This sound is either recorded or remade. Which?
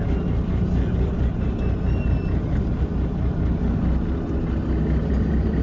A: recorded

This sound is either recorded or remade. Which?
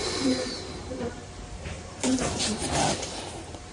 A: remade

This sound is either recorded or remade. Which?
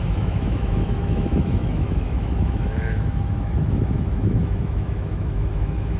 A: remade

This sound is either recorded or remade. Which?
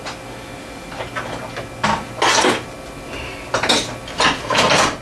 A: recorded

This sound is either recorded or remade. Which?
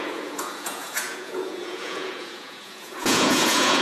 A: remade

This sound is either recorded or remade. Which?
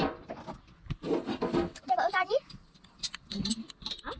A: recorded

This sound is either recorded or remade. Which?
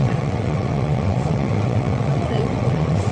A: remade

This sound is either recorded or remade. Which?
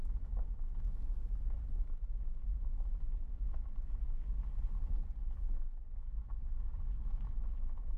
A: recorded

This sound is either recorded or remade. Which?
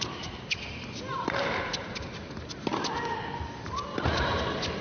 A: recorded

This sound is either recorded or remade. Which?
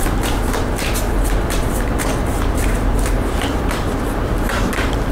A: remade